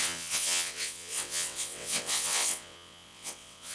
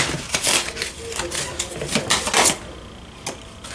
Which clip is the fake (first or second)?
first